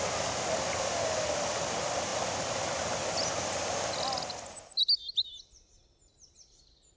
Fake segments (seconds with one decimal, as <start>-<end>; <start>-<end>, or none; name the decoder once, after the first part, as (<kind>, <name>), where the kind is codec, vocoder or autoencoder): none